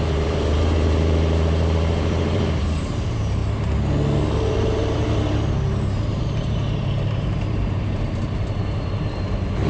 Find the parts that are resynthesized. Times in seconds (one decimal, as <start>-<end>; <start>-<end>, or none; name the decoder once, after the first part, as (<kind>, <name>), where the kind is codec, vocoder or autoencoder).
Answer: 0.0-3.4 (vocoder, BigVGAN v2); 4.5-9.7